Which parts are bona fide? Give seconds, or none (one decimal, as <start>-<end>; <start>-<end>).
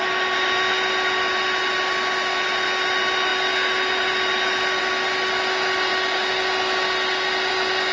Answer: 0.0-7.9